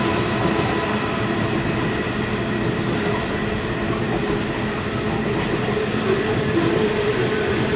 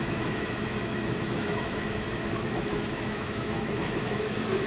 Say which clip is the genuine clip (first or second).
first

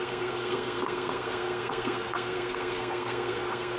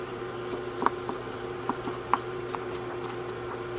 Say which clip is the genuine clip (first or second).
second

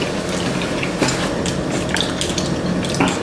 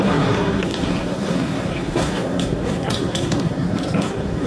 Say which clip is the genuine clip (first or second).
first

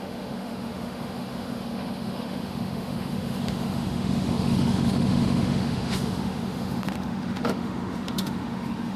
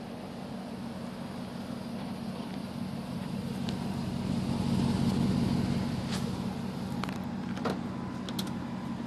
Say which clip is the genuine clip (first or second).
second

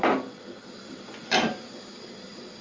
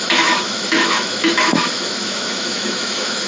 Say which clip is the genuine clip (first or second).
first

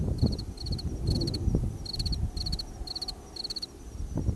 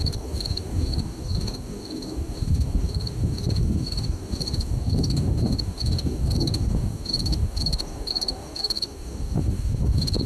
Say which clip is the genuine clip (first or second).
first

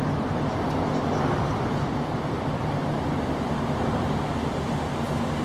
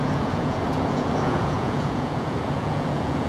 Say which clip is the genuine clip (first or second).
first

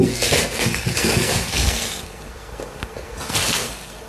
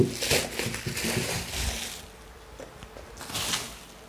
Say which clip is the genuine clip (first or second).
second